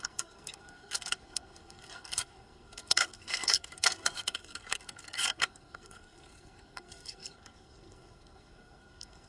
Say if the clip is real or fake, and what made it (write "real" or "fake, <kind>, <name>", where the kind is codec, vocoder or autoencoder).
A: fake, codec, SNAC